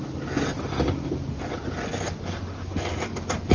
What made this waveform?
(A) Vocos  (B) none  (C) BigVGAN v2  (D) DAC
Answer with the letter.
B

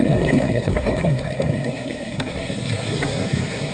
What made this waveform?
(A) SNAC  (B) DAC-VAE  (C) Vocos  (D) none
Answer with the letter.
A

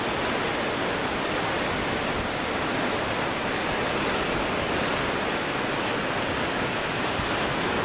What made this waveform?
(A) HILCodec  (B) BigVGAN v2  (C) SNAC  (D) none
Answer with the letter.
D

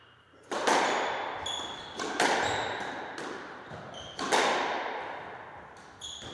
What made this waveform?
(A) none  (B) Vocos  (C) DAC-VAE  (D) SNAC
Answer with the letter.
A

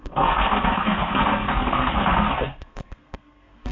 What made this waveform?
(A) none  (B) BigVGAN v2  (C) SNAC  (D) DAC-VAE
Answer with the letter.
C